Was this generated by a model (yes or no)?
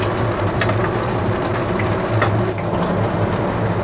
no